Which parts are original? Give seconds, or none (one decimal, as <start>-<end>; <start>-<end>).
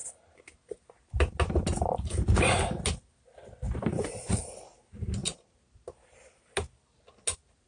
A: 0.0-7.7